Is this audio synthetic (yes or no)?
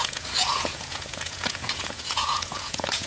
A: yes